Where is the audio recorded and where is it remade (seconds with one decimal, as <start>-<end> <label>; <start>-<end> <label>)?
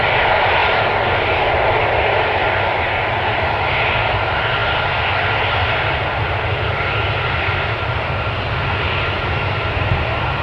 0.0-10.4 recorded